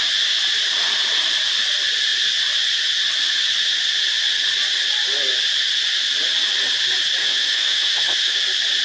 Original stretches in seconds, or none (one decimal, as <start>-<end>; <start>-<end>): 0.0-7.2; 8.4-8.8